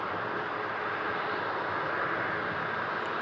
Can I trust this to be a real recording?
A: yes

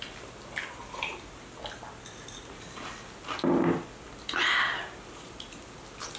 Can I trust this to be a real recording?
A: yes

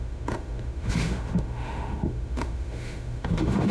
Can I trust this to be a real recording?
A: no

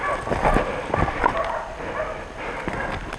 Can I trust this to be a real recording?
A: yes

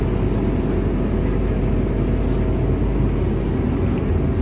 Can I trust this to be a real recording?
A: yes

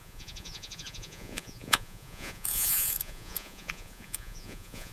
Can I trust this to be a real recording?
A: no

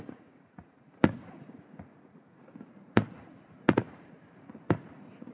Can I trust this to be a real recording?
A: no